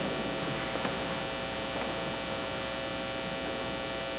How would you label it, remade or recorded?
recorded